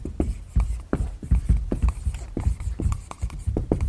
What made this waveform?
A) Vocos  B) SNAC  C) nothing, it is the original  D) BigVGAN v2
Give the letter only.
D